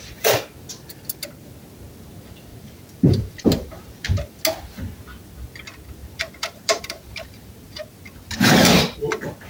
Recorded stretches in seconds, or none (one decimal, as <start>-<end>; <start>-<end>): 0.0-2.5; 4.4-6.0; 7.9-9.5